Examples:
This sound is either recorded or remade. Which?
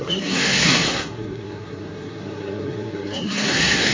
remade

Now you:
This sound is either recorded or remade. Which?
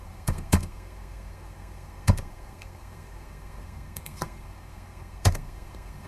remade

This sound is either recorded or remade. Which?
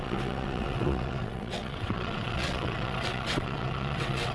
remade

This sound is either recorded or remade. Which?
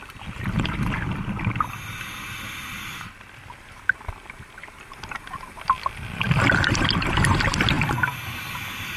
recorded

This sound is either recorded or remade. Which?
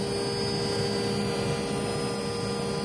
recorded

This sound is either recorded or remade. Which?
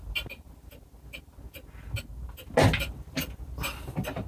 recorded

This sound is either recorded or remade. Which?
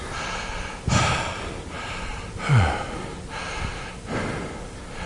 recorded